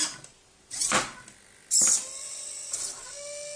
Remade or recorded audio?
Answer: recorded